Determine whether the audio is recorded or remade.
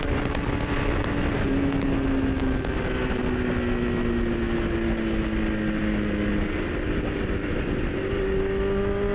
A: recorded